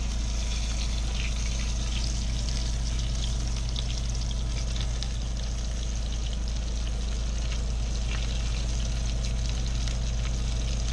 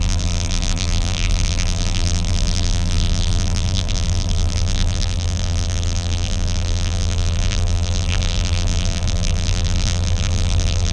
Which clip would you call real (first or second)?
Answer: first